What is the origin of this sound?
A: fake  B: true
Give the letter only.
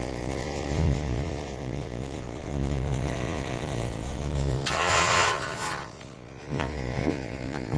A